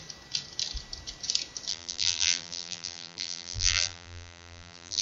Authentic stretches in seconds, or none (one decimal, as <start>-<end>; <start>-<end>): 0.0-1.7